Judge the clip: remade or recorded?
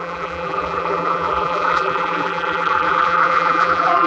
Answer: remade